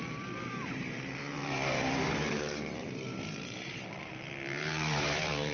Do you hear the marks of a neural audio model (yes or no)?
yes